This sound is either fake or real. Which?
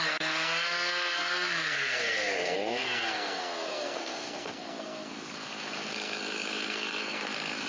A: fake